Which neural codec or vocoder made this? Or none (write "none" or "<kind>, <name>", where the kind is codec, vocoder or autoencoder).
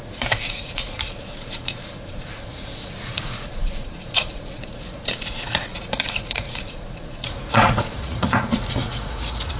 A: vocoder, Vocos